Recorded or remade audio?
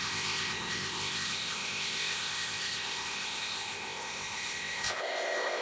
remade